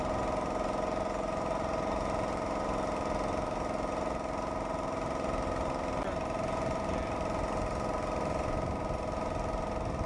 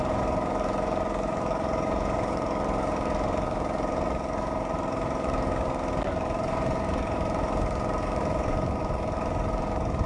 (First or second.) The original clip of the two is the first